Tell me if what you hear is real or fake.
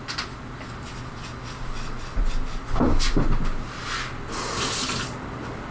real